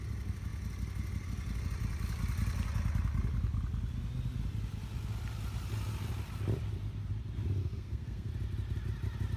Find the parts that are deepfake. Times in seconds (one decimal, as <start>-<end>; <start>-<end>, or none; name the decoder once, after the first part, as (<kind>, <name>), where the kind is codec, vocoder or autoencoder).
7.6-8.3 (codec, SNAC)